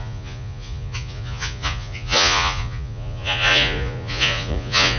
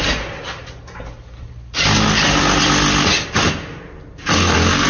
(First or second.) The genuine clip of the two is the second